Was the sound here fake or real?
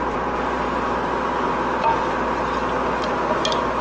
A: real